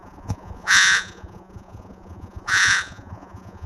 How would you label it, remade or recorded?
remade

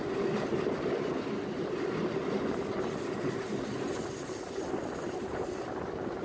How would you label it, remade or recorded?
recorded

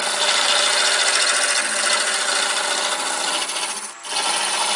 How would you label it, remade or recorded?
recorded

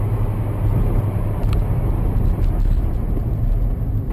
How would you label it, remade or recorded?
remade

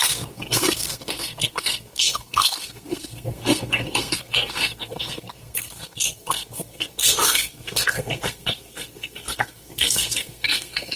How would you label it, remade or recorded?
remade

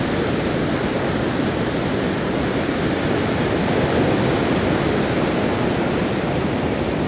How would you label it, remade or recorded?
recorded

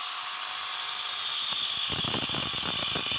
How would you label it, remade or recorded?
recorded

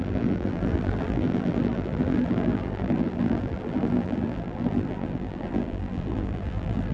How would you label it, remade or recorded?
remade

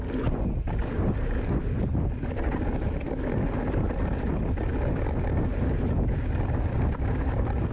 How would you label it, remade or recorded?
recorded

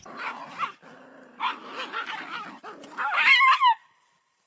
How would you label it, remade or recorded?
remade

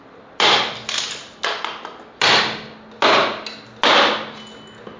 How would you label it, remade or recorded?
recorded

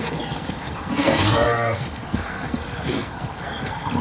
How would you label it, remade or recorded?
remade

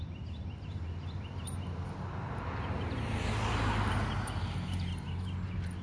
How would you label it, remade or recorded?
recorded